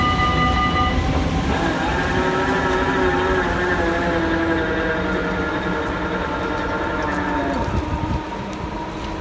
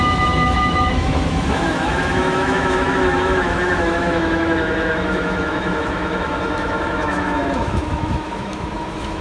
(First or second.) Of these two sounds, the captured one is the first